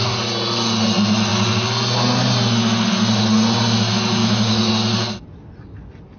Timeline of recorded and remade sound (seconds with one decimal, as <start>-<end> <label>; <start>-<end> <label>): 0.0-4.2 recorded; 4.2-4.7 remade; 4.7-6.2 recorded